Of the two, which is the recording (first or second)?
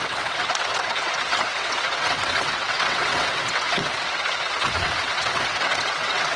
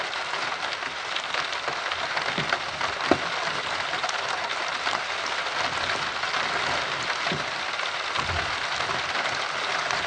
second